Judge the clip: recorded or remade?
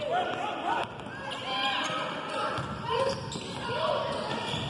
recorded